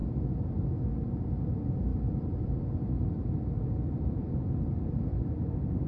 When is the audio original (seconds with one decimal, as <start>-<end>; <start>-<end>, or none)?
0.5-1.9; 4.2-5.1